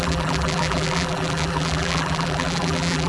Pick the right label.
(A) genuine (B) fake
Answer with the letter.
B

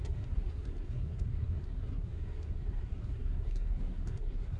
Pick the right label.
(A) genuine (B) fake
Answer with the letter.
B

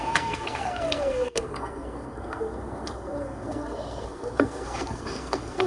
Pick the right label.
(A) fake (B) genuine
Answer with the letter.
A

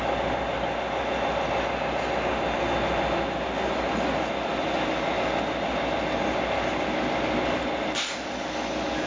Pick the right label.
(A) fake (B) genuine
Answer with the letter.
B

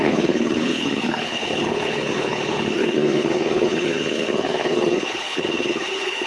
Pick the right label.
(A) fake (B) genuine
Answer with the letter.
A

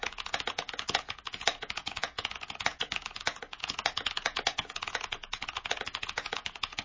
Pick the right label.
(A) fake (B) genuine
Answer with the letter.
A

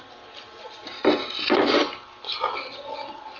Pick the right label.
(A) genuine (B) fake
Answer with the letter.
A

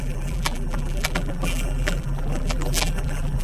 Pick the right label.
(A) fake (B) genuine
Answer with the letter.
A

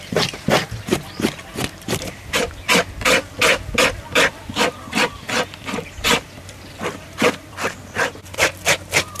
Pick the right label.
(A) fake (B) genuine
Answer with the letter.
A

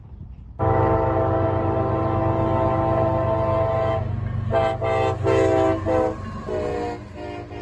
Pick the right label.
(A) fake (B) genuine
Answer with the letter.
B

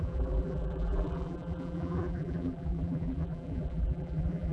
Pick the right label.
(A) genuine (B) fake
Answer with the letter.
B